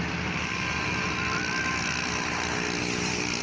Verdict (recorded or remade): recorded